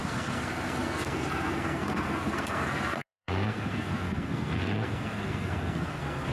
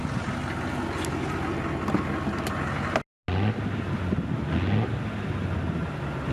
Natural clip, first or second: second